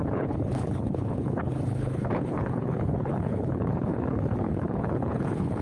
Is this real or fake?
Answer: fake